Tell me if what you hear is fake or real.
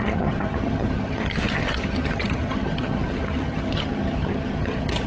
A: fake